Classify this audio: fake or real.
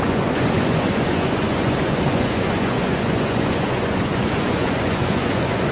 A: fake